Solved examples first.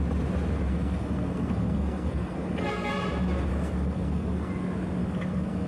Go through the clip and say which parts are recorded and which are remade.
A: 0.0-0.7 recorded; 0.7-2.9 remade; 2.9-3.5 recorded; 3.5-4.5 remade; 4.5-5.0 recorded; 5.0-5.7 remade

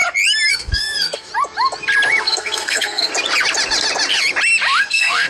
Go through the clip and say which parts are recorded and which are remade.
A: 0.0-0.5 recorded; 0.5-1.3 remade; 1.3-2.2 recorded; 2.2-3.1 remade; 3.1-4.8 recorded; 4.8-5.3 remade

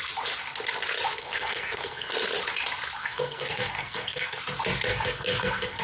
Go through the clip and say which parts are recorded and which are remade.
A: 0.0-1.2 recorded; 1.2-2.1 remade; 2.1-3.0 recorded; 3.0-4.4 remade; 4.4-4.9 recorded; 4.9-5.8 remade

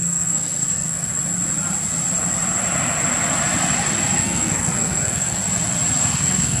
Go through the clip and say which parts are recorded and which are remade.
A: 0.0-1.1 remade; 1.1-4.2 recorded; 4.2-5.4 remade; 5.4-6.0 recorded; 6.0-6.6 remade

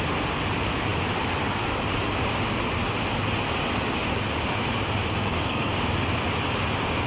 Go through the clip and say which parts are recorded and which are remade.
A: 0.0-5.1 recorded; 5.1-5.7 remade; 5.7-7.1 recorded